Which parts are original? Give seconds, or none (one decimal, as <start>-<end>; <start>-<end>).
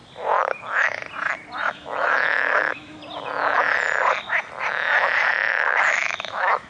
0.0-0.6; 1.0-1.6; 3.0-5.5